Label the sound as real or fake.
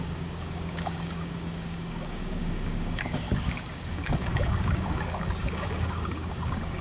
fake